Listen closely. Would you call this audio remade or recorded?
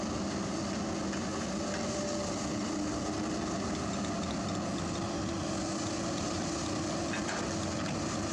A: recorded